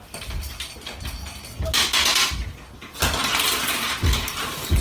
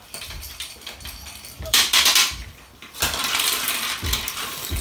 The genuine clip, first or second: first